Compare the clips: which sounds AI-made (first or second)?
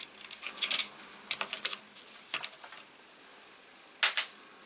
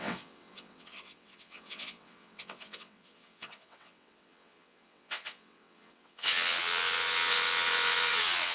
second